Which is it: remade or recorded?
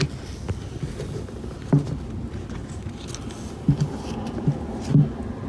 recorded